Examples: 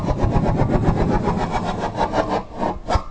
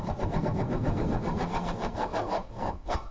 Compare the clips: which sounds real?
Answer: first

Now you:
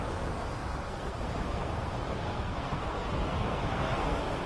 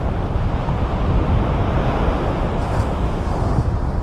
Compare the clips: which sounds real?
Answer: second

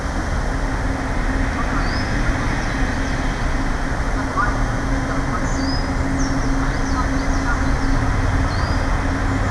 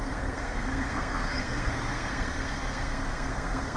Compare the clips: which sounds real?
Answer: first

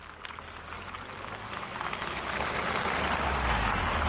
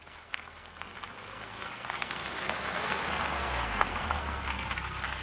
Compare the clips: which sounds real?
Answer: first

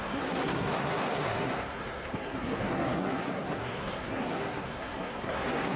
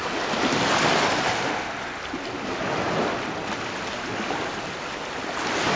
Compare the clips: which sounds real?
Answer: second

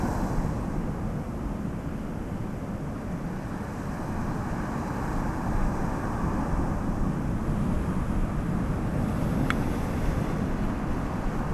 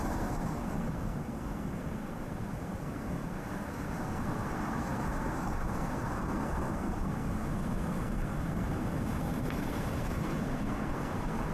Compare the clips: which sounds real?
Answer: first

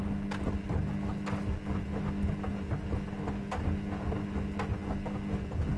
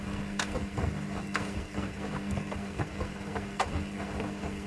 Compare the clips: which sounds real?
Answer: first